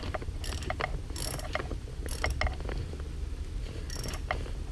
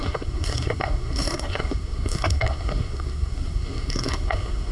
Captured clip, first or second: first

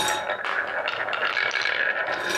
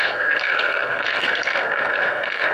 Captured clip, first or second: first